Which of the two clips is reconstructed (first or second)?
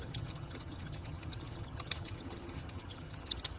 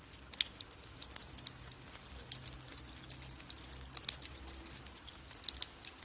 first